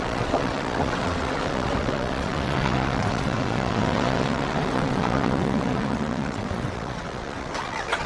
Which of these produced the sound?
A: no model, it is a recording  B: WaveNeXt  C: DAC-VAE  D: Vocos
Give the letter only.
B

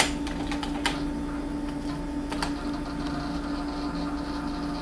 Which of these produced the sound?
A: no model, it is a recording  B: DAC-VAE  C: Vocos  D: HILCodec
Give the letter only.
A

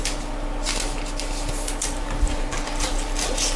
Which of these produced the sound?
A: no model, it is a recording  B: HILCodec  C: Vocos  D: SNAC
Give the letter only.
A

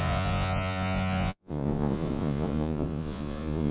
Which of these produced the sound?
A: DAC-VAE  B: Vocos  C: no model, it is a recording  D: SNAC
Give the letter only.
B